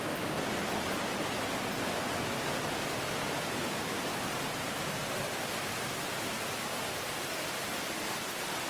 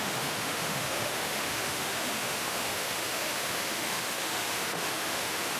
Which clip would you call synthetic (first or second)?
second